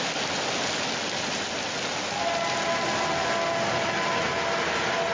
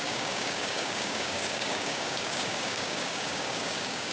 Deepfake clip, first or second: second